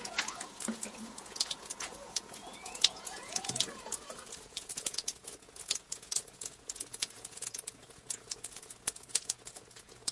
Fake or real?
fake